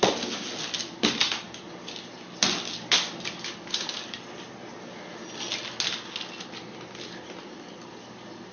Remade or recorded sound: recorded